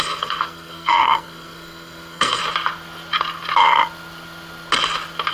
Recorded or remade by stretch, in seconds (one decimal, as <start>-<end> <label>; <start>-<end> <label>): 0.0-2.4 remade; 2.4-5.3 recorded